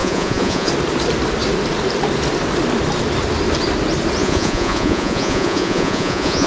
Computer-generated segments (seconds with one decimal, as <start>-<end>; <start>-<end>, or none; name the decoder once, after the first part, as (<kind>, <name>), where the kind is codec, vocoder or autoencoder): 0.0-0.7 (vocoder, Vocos); 4.2-6.5